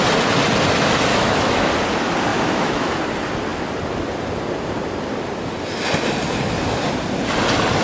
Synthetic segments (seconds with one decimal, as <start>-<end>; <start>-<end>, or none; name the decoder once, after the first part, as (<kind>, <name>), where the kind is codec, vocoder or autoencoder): 1.1-1.7 (autoencoder, DAC-VAE); 2.3-3.0